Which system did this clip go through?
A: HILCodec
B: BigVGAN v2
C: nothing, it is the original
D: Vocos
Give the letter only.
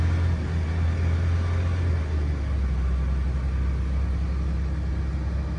C